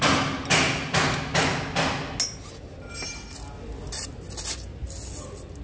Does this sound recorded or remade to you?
recorded